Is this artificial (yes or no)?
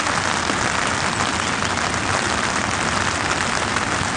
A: no